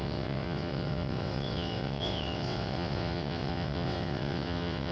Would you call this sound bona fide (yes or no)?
no